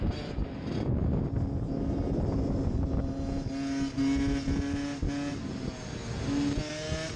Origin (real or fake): real